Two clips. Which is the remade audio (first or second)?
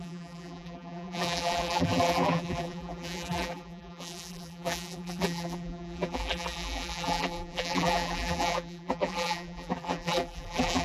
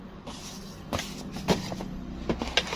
first